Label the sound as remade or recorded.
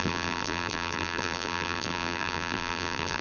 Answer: remade